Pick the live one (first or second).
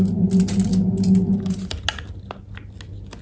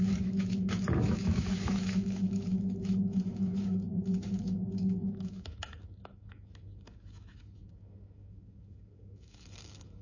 first